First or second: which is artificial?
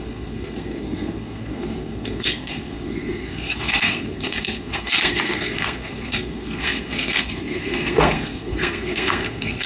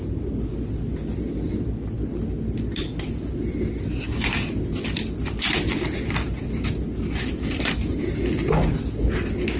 first